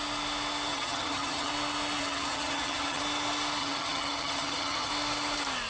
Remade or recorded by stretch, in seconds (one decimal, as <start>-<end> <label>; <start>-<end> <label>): 0.0-0.7 recorded; 0.7-1.5 remade; 1.5-2.0 recorded; 2.0-3.0 remade; 3.0-3.6 recorded; 3.6-4.9 remade; 4.9-5.7 recorded

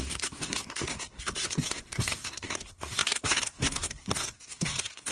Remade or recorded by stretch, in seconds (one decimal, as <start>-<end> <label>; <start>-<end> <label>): 0.0-5.1 remade

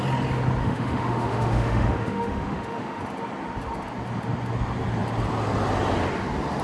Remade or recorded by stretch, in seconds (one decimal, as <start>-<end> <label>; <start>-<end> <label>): 0.0-0.6 recorded; 0.6-3.0 remade; 3.0-6.6 recorded

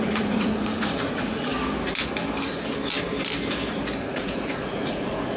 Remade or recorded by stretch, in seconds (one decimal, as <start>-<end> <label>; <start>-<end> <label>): 0.0-1.5 remade; 1.5-4.1 recorded; 4.1-5.4 remade

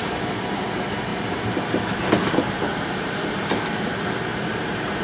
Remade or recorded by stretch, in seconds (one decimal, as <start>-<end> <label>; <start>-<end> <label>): 0.0-1.1 recorded; 1.1-3.5 remade; 3.5-4.3 recorded; 4.3-5.0 remade

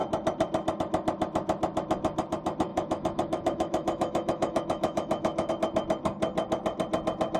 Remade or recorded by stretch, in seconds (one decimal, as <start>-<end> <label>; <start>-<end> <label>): 0.0-2.7 recorded; 2.7-5.5 remade; 5.5-7.4 recorded